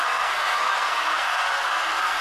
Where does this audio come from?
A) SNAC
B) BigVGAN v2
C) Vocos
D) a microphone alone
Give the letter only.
A